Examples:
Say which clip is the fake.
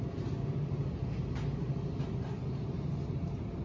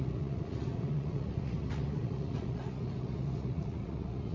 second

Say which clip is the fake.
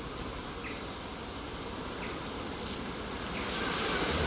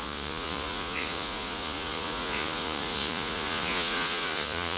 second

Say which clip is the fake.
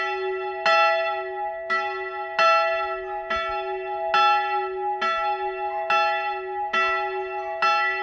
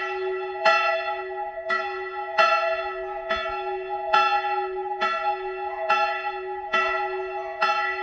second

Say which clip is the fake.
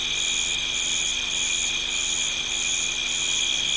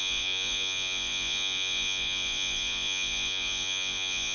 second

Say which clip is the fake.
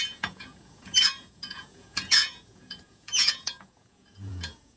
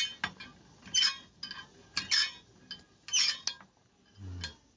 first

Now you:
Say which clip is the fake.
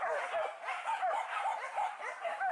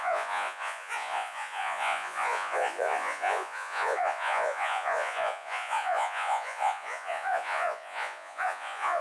second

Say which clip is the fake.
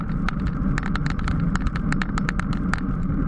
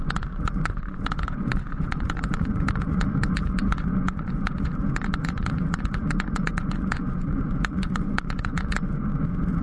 second